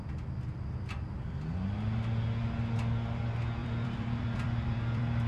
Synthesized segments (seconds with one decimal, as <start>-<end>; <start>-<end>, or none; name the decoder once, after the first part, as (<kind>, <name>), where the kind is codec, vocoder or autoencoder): 3.6-5.3 (vocoder, BigVGAN v2)